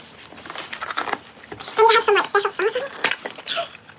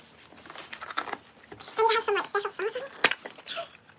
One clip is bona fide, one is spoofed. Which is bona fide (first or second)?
second